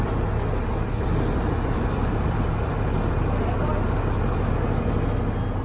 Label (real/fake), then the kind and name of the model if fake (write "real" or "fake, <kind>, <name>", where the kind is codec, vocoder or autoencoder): real